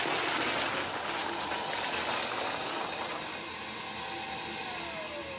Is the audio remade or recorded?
recorded